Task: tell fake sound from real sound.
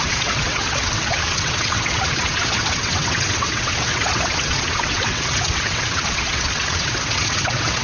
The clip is fake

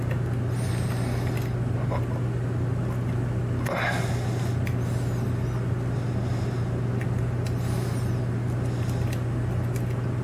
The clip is real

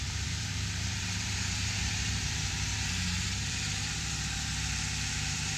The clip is fake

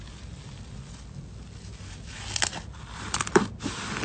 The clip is real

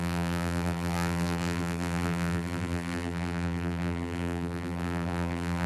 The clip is fake